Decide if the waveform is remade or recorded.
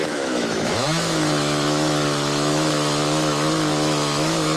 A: remade